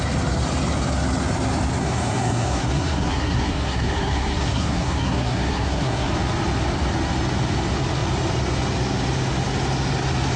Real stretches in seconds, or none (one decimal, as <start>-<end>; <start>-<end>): 0.0-1.8; 6.1-10.4